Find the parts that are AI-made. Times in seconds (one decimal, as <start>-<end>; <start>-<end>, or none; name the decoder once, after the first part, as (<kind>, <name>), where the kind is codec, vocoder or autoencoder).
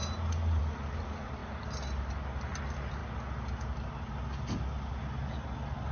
none